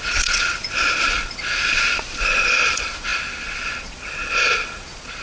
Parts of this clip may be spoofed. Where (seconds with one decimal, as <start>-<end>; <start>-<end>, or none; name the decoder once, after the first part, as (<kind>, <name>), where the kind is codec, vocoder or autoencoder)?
0.0-5.2 (vocoder, Vocos)